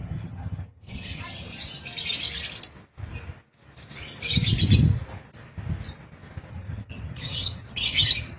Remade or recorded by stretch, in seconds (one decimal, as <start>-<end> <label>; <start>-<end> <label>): 0.0-1.5 remade; 1.5-6.5 recorded; 6.5-8.4 remade